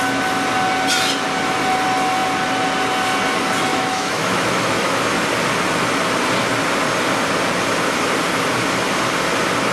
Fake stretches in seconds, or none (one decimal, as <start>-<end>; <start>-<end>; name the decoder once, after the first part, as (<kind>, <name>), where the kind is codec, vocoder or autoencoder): 3.7-5.0 (autoencoder, DAC-VAE)